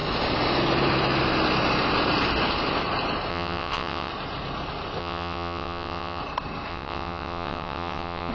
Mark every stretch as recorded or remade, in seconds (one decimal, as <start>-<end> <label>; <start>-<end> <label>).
0.0-3.3 recorded; 3.3-4.1 remade; 4.1-5.0 recorded; 5.0-6.2 remade; 6.2-6.7 recorded; 6.7-8.3 remade

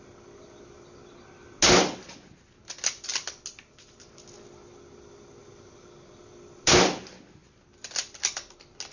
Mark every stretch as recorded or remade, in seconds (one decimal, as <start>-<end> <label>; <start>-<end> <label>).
0.0-8.9 recorded